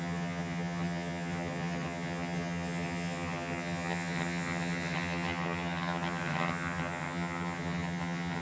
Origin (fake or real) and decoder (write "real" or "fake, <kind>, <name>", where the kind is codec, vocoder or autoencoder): fake, vocoder, HiFi-GAN